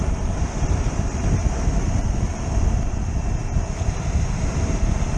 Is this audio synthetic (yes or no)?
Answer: no